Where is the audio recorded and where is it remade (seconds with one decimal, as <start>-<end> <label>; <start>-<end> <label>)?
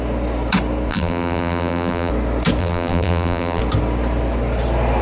0.0-0.9 recorded; 0.9-2.1 remade; 2.1-2.6 recorded; 2.6-3.6 remade; 3.6-5.0 recorded